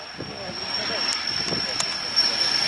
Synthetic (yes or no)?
no